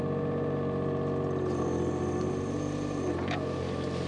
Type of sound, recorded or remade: recorded